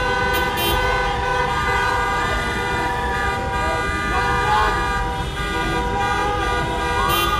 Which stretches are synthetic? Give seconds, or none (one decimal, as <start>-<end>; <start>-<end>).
1.3-3.3